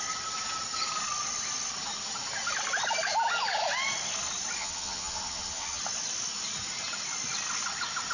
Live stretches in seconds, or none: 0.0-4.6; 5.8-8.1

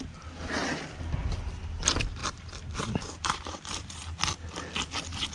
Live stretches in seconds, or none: 0.0-5.3

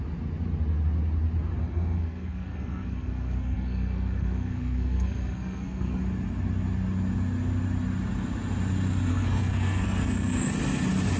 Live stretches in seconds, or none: 0.0-1.6; 6.0-9.1; 10.5-11.2

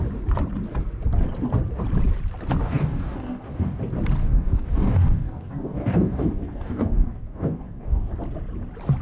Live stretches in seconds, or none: 0.0-2.6; 3.8-4.2; 8.1-9.0

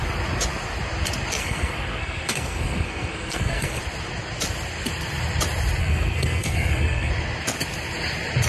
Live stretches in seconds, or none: 0.0-1.4; 3.8-5.8; 7.1-8.5

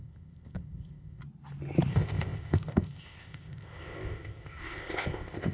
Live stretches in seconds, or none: 1.2-1.9

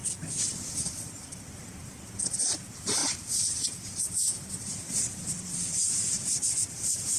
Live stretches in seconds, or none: 0.0-3.0; 4.0-7.2